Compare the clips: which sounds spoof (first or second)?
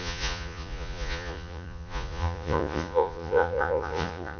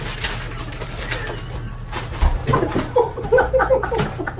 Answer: first